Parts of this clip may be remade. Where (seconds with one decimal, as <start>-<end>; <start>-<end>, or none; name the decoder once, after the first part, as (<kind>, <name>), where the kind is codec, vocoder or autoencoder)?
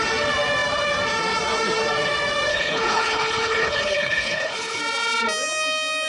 2.5-4.8 (codec, HILCodec)